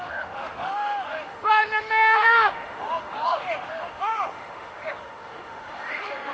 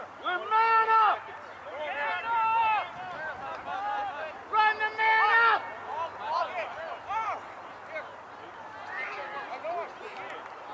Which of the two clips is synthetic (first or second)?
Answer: first